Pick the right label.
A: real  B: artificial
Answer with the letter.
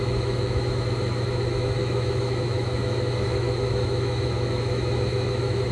B